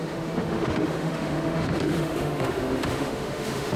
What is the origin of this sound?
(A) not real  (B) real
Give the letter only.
A